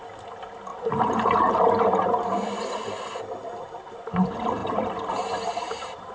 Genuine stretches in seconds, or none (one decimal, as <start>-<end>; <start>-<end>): 0.0-0.7; 1.6-4.6

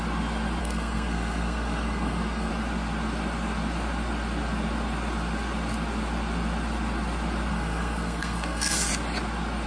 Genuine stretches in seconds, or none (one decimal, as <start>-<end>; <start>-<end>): 0.0-0.6; 2.5-7.5; 8.9-9.7

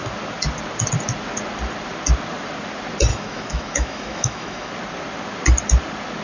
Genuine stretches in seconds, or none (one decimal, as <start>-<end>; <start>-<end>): 0.0-3.1; 4.7-6.2

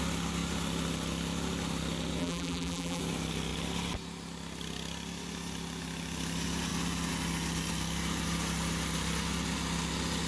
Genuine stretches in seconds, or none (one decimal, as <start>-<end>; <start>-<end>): 0.0-2.2; 3.0-10.3

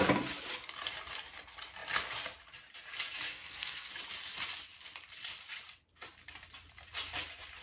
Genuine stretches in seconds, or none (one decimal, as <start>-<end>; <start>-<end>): 0.0-3.3; 3.9-7.6

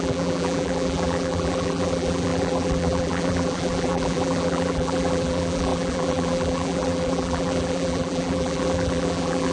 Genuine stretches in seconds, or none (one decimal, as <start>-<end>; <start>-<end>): none

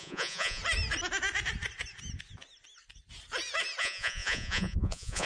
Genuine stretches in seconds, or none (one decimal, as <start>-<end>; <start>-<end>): 0.6-3.8